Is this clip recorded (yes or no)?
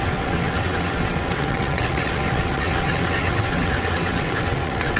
no